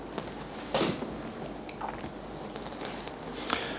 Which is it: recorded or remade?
recorded